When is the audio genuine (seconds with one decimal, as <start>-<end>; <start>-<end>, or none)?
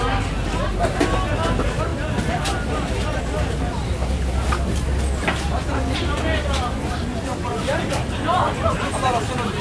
0.0-9.6